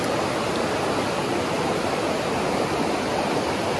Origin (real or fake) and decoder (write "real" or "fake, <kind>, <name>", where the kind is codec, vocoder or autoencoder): real